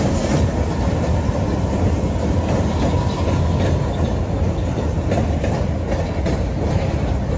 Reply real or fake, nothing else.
real